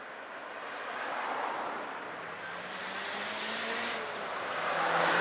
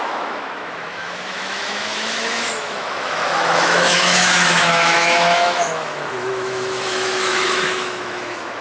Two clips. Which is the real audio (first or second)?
first